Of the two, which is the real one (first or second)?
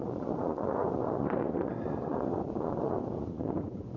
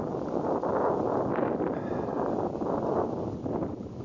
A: second